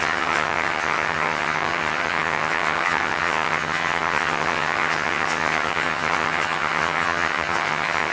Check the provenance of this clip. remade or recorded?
remade